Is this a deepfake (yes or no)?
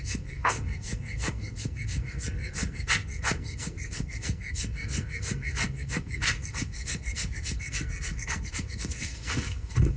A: yes